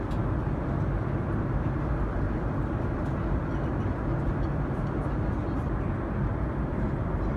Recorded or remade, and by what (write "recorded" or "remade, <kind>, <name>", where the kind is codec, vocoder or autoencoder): recorded